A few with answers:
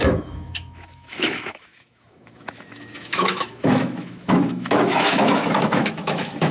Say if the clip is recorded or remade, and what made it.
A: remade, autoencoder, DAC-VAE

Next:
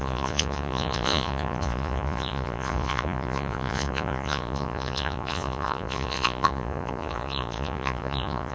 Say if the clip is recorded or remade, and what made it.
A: remade, vocoder, Vocos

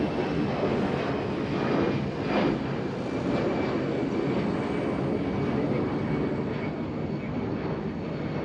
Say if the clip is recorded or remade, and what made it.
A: recorded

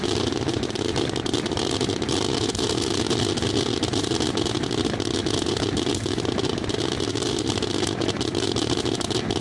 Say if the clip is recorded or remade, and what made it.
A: recorded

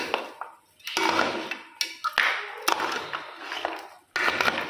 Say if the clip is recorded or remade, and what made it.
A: recorded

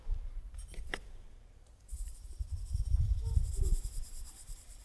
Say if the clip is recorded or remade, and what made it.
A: remade, vocoder, BigVGAN v2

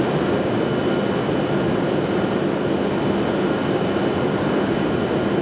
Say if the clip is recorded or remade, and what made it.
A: recorded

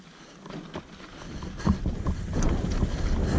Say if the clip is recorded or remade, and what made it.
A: recorded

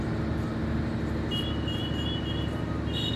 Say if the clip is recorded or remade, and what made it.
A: recorded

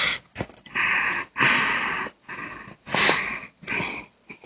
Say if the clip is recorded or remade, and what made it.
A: remade, vocoder, BigVGAN v2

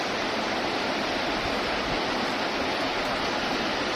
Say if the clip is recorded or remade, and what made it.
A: recorded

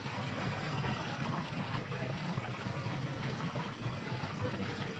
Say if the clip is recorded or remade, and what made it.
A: remade, codec, SNAC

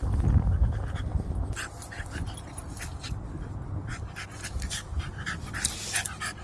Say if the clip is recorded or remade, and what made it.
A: recorded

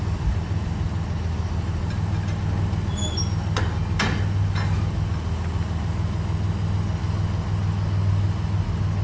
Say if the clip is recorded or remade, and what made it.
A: recorded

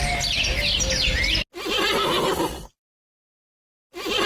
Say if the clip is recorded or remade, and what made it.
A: recorded